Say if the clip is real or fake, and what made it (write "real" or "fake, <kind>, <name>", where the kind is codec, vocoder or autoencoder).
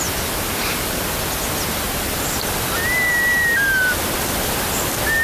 real